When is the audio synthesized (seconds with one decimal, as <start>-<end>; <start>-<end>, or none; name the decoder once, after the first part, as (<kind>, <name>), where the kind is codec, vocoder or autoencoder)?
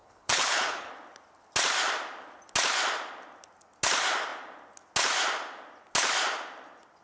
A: 0.0-0.9 (codec, HILCodec)